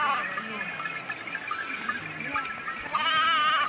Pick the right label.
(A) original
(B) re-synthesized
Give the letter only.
A